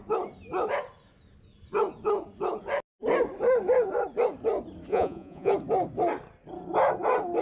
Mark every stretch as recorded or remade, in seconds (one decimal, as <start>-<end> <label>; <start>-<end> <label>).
0.0-4.9 recorded; 4.9-5.5 remade; 5.5-7.4 recorded